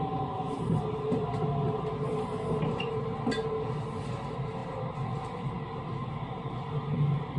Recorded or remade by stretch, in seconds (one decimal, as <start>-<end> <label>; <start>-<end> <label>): 0.0-7.4 recorded